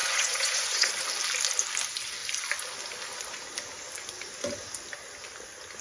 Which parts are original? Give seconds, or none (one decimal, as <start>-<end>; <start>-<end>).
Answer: 0.9-5.8